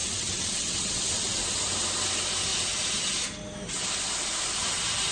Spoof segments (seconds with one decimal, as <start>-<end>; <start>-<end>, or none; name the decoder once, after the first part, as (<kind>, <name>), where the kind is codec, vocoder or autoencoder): 0.0-1.6 (vocoder, WaveNeXt)